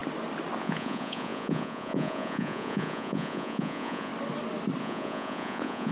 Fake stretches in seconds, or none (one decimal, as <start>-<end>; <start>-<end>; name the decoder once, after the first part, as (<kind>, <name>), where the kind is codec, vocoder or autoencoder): 0.6-4.1 (vocoder, Vocos); 4.8-5.9